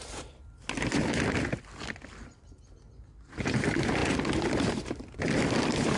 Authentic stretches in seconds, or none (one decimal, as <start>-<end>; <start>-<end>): 0.4-3.6; 4.0-4.7

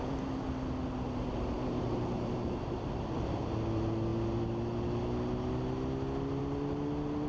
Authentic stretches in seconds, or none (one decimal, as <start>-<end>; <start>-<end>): 0.0-1.7; 2.9-7.3